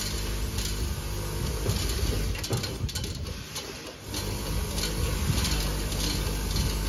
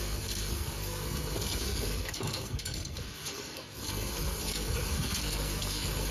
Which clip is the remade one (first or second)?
second